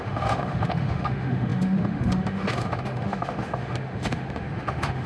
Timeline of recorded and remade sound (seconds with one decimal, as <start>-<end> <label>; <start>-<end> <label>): 0.0-5.1 remade